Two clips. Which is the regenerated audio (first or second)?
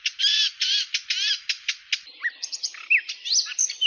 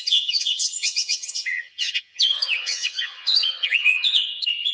second